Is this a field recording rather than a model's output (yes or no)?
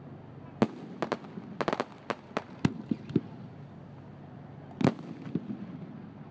yes